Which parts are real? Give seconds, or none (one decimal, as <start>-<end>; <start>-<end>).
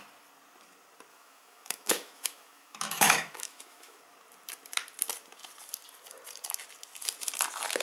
0.0-1.1; 4.0-7.8